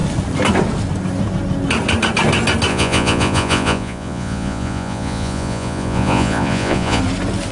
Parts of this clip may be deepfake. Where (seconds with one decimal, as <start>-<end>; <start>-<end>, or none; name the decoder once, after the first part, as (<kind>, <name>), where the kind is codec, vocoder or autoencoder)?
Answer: 2.7-7.0 (vocoder, Vocos)